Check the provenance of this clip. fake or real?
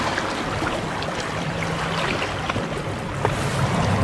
real